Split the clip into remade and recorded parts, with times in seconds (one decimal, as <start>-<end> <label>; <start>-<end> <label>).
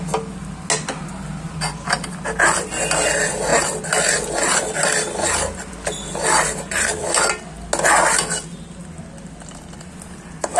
0.0-10.6 recorded